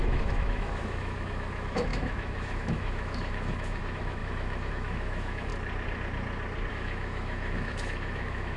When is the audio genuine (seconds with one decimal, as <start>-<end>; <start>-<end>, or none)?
5.5-6.7